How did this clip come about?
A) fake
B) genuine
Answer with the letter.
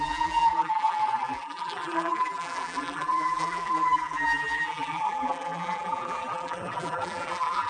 A